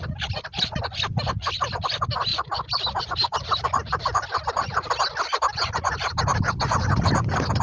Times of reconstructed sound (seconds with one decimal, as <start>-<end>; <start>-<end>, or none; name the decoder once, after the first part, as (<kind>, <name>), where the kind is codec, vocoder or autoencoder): 2.3-3.1 (vocoder, BigVGAN v2)